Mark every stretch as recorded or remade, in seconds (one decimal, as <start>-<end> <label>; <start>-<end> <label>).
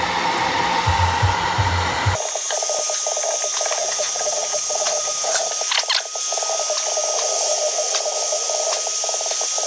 0.0-3.8 recorded; 3.8-5.5 remade; 5.5-9.7 recorded